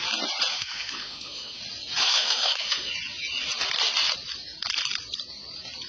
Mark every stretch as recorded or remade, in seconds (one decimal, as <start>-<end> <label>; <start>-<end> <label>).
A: 0.0-0.5 recorded; 0.5-1.6 remade; 1.6-2.0 recorded; 2.0-2.9 remade; 2.9-5.9 recorded